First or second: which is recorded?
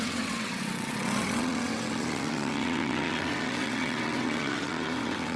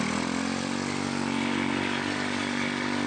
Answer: second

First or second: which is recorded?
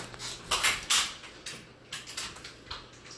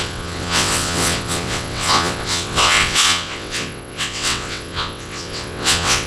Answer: first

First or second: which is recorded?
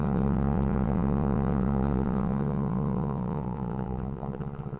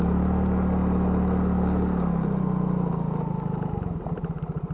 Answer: second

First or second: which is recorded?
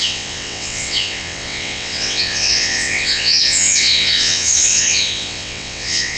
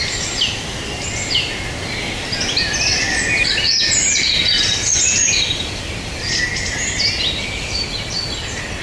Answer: second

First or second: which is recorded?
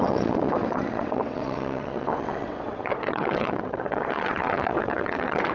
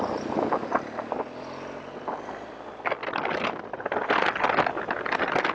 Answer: second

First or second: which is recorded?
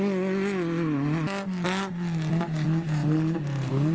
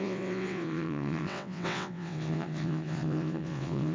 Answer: first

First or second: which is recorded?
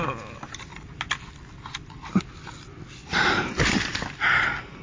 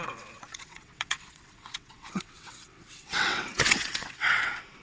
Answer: first